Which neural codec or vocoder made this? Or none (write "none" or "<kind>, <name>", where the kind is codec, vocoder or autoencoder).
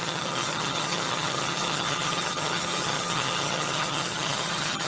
vocoder, HiFi-GAN